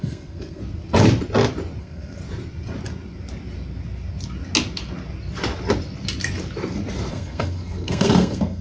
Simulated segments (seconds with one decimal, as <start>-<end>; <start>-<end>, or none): 0.0-0.6; 1.8-2.2; 7.1-8.6